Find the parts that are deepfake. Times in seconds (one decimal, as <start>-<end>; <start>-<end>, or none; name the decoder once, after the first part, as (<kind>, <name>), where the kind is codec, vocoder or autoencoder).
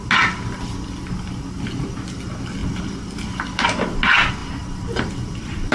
2.6-3.6 (vocoder, BigVGAN v2); 4.4-5.7